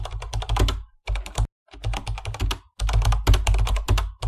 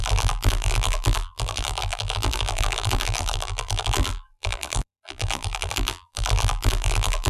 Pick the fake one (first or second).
second